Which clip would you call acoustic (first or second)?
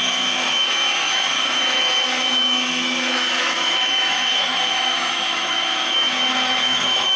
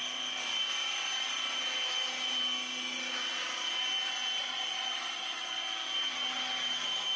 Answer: second